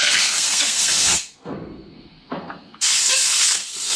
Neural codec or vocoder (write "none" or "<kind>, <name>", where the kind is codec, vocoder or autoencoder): codec, SNAC